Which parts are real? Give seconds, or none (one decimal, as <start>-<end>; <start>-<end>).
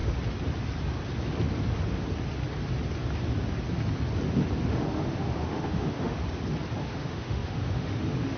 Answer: 0.0-4.6; 6.2-6.8